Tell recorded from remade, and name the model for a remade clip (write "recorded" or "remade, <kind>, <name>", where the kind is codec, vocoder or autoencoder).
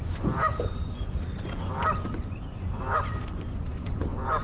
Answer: remade, vocoder, Vocos